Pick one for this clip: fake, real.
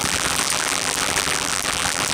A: fake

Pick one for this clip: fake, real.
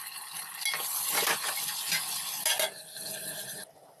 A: real